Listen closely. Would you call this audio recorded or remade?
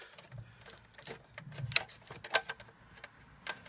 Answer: recorded